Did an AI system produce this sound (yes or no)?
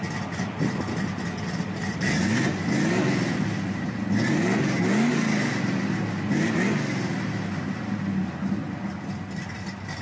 no